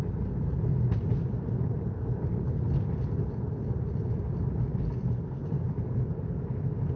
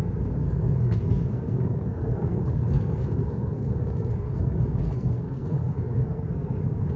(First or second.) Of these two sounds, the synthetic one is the second